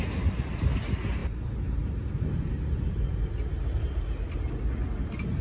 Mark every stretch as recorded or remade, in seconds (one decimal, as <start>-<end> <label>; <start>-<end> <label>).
0.0-5.4 recorded